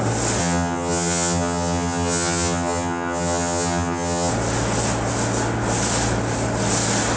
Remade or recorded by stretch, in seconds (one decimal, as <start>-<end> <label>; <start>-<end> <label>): 0.0-0.4 recorded; 0.4-4.3 remade; 4.3-7.2 recorded